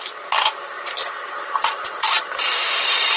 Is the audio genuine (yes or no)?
no